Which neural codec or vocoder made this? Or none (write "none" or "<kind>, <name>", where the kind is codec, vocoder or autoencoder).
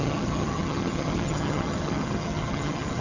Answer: vocoder, HiFi-GAN